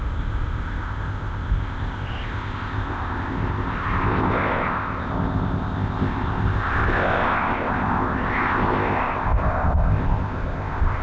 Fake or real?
fake